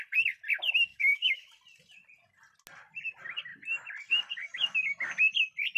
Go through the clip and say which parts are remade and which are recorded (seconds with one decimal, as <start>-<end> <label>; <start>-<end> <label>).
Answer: 0.0-0.9 recorded; 0.9-1.5 remade; 1.5-5.8 recorded